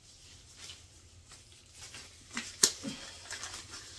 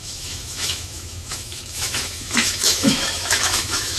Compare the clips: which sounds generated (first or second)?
second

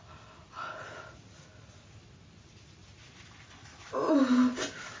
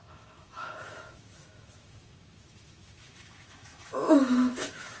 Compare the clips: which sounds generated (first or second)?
second